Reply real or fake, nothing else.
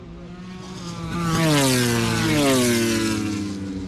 real